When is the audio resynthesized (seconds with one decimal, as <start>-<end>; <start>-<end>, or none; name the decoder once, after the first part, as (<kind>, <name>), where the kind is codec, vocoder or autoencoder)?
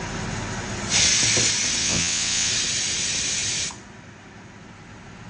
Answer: 1.8-2.5 (vocoder, WaveNeXt)